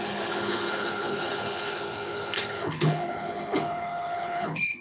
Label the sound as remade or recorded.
remade